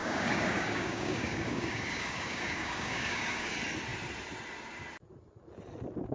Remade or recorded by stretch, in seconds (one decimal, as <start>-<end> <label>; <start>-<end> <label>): 0.0-3.5 remade; 3.5-6.1 recorded